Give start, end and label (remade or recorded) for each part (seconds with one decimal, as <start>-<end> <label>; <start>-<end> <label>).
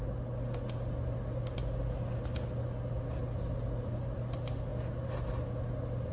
0.0-6.1 recorded